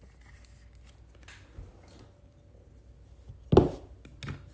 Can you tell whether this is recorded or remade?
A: recorded